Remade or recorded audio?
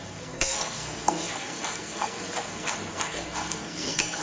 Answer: remade